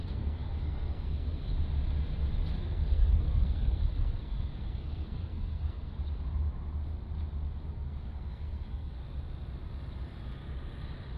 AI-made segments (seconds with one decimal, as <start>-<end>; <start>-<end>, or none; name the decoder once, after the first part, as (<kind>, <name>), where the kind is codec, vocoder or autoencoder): 0.0-1.5 (codec, SNAC); 2.6-6.0; 7.7-9.0